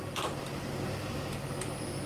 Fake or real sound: real